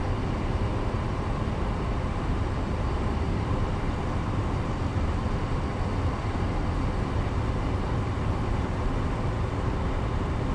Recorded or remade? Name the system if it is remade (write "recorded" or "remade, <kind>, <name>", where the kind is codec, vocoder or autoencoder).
recorded